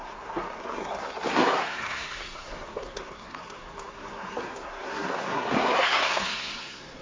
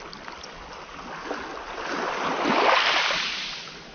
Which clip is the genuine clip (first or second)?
second